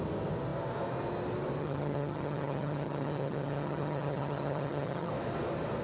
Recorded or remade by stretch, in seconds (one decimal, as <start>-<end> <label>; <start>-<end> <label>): 0.0-1.6 recorded; 1.6-5.1 remade; 5.1-5.8 recorded

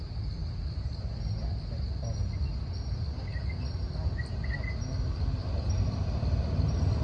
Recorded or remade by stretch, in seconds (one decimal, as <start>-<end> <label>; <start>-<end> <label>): 0.0-7.0 recorded

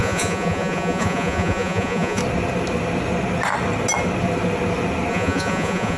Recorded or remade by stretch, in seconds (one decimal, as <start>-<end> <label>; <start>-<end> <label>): 0.0-2.2 remade; 2.2-5.1 recorded; 5.1-6.0 remade

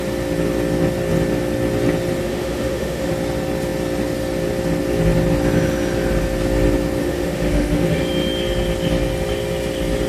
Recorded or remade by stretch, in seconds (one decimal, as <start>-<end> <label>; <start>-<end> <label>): 0.0-2.2 recorded; 2.2-3.1 remade; 3.1-7.0 recorded; 7.0-8.0 remade; 8.0-10.1 recorded

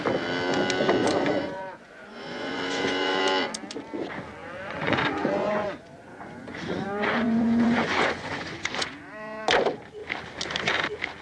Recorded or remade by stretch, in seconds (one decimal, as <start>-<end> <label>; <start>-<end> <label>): 0.0-1.0 recorded; 1.0-3.2 remade; 3.2-4.4 recorded; 4.4-9.4 remade; 9.4-11.2 recorded

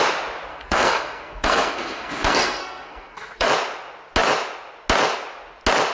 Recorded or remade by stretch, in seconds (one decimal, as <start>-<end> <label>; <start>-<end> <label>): 0.0-0.5 recorded; 0.5-3.5 remade; 3.5-5.9 recorded

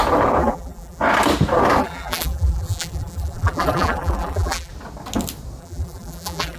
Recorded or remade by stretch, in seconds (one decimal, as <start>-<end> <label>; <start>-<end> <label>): 0.0-0.4 recorded; 0.4-1.0 remade; 1.0-1.8 recorded; 1.8-4.7 remade; 4.7-5.6 recorded; 5.6-6.6 remade

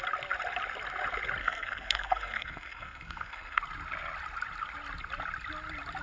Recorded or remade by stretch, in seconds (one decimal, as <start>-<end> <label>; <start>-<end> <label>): 0.0-1.4 recorded; 1.4-3.6 remade; 3.6-6.0 recorded